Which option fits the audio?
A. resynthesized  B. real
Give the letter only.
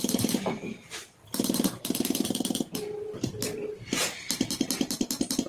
A